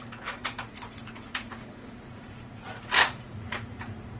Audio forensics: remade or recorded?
remade